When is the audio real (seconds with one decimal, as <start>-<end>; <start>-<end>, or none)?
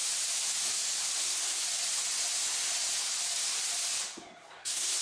0.0-1.2; 1.6-4.6